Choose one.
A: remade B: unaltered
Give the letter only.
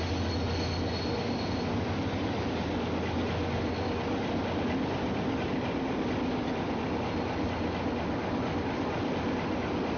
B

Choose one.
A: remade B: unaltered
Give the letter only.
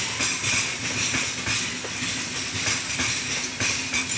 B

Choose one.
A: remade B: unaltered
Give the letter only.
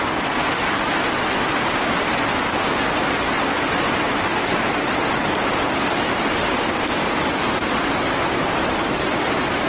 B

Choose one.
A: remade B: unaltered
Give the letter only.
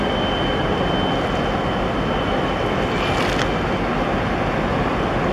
B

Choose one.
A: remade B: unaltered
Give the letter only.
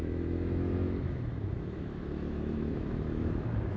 A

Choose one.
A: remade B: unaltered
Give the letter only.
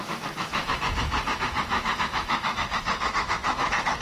A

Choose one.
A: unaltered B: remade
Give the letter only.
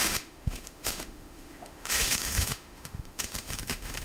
B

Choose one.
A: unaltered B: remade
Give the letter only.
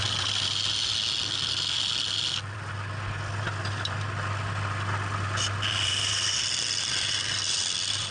A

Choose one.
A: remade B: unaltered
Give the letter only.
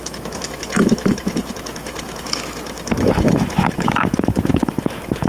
A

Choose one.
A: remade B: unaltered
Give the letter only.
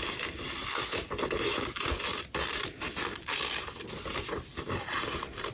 B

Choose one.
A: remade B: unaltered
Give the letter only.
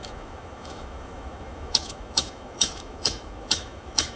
A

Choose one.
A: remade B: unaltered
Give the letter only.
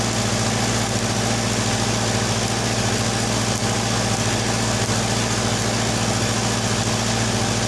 B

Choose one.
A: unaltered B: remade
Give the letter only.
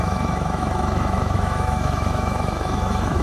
B